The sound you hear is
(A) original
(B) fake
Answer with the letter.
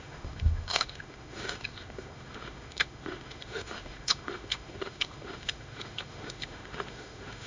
B